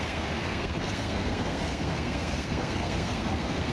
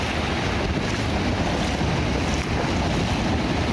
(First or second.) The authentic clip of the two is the second